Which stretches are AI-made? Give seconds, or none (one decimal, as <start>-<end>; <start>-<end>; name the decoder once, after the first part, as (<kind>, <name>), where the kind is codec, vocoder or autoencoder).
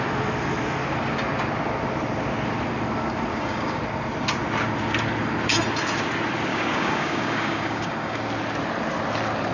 3.3-3.8 (codec, DAC); 6.5-8.3